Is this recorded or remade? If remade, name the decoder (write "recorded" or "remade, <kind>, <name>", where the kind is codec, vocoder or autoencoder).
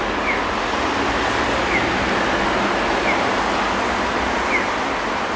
recorded